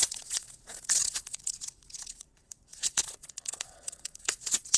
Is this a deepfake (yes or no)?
yes